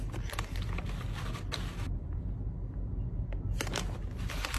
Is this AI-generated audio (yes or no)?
no